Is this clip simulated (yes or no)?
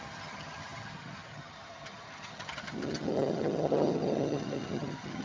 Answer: yes